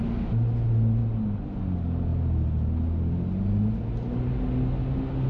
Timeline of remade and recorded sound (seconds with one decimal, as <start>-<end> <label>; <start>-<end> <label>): 0.0-5.3 recorded